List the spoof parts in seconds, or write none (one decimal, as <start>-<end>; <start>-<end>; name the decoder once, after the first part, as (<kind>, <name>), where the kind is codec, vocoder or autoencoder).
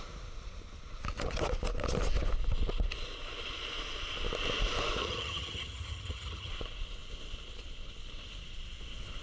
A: 5.0-6.5 (vocoder, HiFi-GAN)